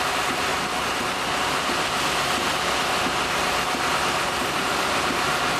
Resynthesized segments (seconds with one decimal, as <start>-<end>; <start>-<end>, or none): 4.4-5.6